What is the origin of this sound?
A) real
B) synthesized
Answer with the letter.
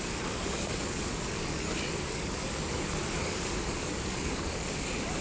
B